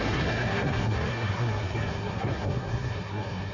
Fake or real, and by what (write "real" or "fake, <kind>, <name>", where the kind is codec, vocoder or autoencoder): fake, codec, SNAC